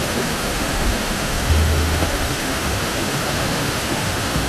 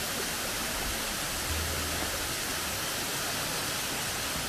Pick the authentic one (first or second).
second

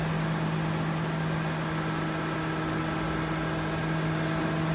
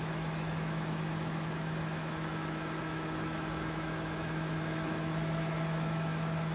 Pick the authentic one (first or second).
first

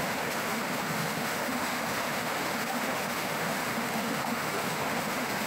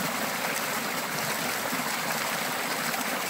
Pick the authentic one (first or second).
second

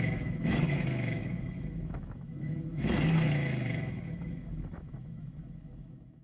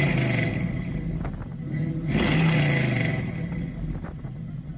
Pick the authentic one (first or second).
second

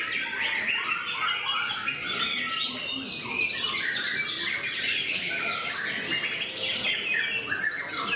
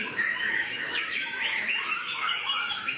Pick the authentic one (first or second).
first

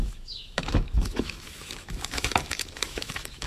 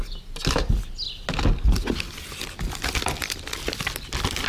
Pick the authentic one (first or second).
second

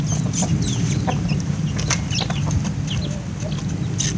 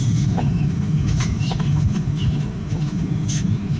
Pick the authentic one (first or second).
first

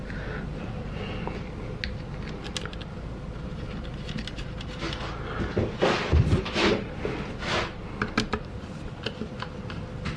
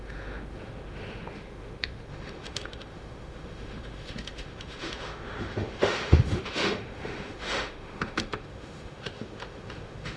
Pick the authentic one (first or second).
first